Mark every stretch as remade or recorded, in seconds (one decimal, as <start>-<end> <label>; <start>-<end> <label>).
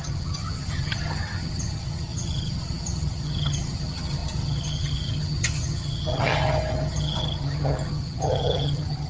0.0-9.1 remade